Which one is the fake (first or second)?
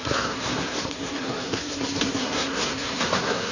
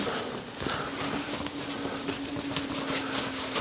first